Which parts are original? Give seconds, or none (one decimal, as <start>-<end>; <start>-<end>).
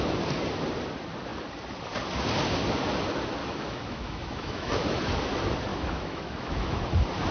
0.0-3.4; 5.1-5.7; 6.8-7.3